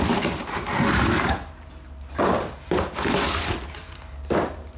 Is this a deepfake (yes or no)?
no